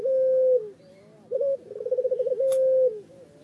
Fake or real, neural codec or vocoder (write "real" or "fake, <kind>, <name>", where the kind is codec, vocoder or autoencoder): real